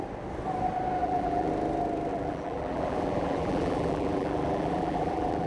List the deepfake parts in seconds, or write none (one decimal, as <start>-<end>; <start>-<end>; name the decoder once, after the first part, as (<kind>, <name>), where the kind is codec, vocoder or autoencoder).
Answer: 1.0-1.5 (vocoder, BigVGAN v2); 2.1-5.5